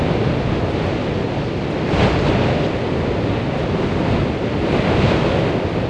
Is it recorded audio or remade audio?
recorded